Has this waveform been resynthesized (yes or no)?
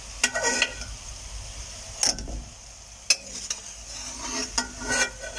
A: no